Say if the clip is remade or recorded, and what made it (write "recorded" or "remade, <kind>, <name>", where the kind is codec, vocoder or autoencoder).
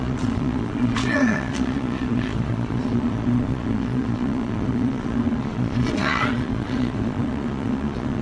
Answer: remade, vocoder, Vocos